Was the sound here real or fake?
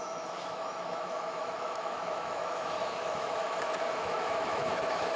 fake